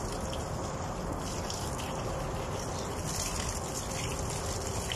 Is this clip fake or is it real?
real